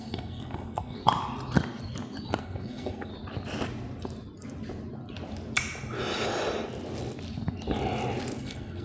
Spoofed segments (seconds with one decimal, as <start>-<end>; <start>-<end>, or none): 0.0-1.0; 2.4-3.1; 8.4-8.8